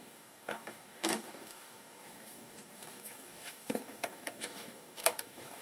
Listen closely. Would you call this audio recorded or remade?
remade